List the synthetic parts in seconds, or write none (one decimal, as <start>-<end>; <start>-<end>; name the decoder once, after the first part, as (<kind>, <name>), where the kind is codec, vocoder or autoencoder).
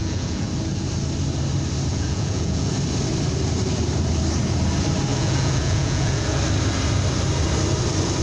0.0-0.5 (vocoder, Vocos); 1.9-2.7; 5.1-6.4